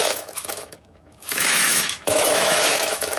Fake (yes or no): yes